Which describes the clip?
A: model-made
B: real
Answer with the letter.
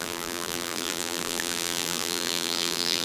A